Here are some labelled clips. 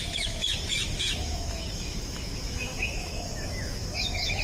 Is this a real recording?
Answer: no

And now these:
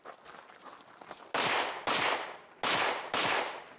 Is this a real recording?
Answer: yes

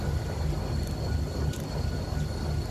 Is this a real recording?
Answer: yes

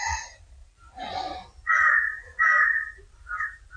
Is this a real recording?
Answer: yes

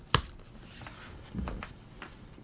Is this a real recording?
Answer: yes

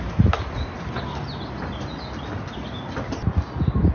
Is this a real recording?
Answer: yes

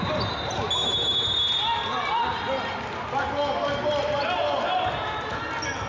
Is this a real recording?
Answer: yes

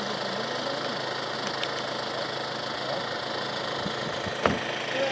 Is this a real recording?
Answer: yes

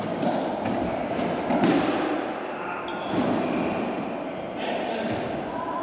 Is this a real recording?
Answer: yes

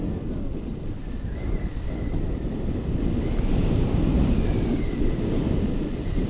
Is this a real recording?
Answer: yes